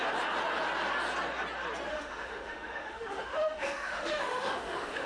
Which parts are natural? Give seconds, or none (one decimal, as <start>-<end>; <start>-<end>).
0.0-1.9